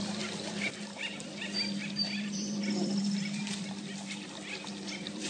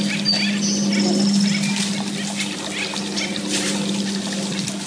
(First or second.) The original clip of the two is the second